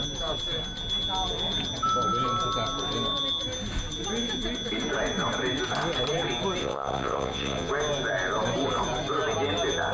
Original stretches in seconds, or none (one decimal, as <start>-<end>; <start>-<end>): 0.0-6.6; 7.7-9.9